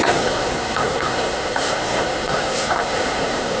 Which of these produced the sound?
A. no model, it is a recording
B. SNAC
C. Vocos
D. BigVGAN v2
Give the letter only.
B